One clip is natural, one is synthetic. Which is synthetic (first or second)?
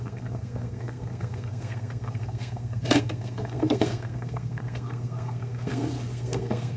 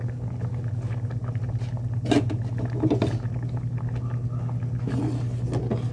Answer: first